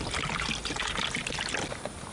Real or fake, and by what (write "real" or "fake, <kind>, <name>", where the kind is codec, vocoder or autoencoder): real